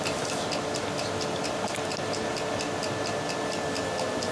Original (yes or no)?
yes